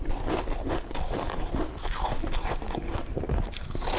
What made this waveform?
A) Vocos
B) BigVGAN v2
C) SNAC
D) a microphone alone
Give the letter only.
D